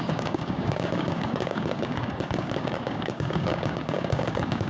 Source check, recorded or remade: remade